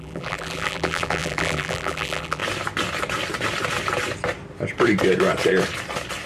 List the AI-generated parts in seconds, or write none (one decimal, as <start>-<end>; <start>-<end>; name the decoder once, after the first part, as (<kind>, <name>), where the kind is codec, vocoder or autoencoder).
0.0-2.4 (vocoder, BigVGAN v2)